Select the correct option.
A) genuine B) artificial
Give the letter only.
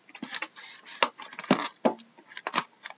A